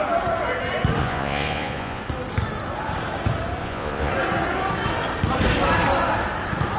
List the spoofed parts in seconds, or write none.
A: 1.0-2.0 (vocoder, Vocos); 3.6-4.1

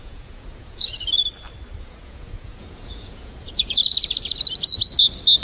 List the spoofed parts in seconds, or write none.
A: 0.0-1.2 (vocoder, Vocos); 1.8-3.8

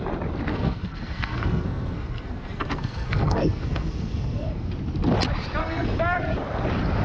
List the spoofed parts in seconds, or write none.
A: 0.5-4.7 (codec, SNAC); 5.6-6.2

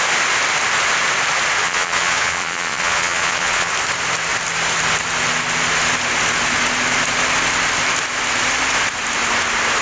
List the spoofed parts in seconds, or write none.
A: 1.6-3.7 (vocoder, Vocos)

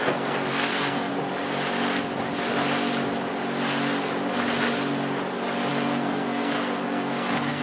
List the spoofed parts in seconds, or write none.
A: 0.0-1.1 (codec, SNAC); 5.7-7.6